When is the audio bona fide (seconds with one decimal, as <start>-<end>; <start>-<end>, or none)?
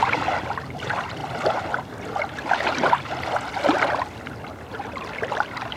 1.2-4.7